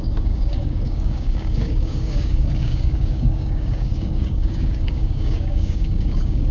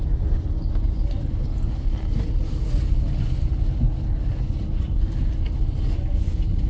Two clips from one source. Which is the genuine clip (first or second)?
second